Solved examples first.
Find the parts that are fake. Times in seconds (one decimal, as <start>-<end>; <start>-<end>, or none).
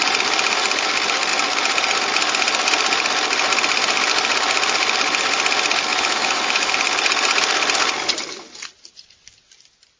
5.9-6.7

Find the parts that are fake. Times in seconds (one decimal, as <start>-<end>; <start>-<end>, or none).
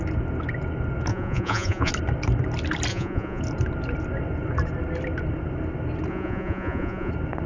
1.1-1.9; 2.9-3.4; 6.1-7.1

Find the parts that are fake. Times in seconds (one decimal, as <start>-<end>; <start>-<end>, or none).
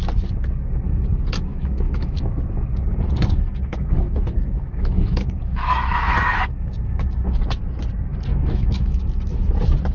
1.5-2.4; 3.7-6.5; 8.3-9.0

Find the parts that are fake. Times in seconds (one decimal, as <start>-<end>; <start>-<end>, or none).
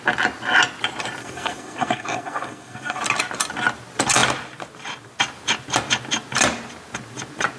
1.2-3.0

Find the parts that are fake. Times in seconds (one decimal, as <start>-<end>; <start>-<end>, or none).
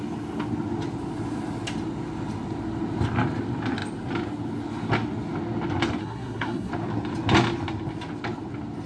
6.0-6.7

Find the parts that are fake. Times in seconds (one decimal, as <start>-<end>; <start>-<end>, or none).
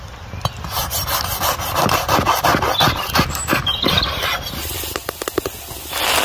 none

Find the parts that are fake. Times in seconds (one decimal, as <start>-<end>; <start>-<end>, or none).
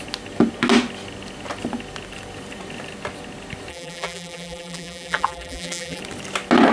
3.7-6.0